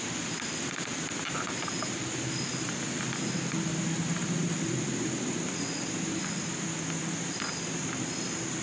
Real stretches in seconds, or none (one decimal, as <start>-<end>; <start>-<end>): 0.0-8.6